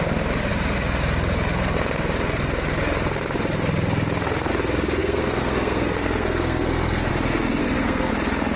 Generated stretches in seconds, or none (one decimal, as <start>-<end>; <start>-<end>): 5.0-7.1; 7.6-8.1